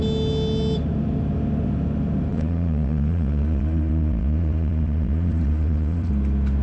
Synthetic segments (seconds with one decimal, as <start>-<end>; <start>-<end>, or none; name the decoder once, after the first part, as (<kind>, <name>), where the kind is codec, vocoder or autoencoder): 2.3-6.1 (vocoder, Vocos)